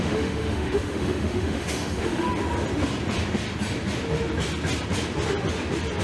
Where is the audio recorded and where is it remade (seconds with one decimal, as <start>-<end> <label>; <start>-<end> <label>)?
0.0-2.3 remade; 2.3-6.0 recorded